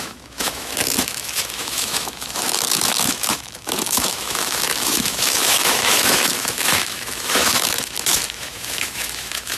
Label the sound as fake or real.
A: fake